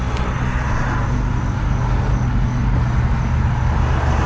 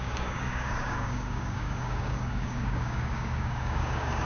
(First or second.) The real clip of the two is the first